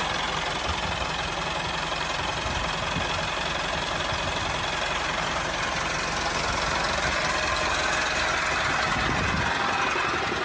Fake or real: real